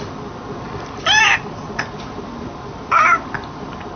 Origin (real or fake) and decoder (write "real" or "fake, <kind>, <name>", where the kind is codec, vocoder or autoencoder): real